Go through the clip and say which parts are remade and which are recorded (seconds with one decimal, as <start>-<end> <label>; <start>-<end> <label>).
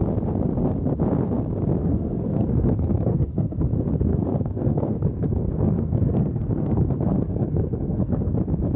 0.0-1.8 recorded; 1.8-3.6 remade; 3.6-4.1 recorded; 4.1-8.3 remade; 8.3-8.8 recorded